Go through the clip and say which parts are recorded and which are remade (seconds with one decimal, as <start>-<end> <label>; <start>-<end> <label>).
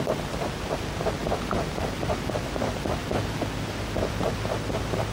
0.0-3.0 remade; 3.0-4.1 recorded; 4.1-5.1 remade